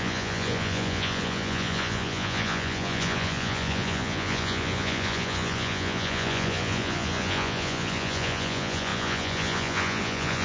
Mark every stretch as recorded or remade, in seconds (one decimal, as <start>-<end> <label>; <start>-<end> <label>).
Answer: 0.0-10.4 remade